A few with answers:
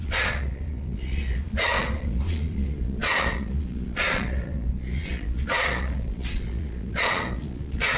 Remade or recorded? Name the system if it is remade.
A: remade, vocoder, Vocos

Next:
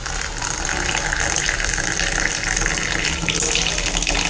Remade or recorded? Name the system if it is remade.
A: recorded